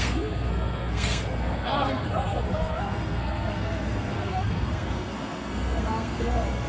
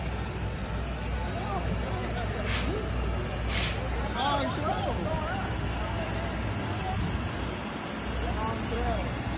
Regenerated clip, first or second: first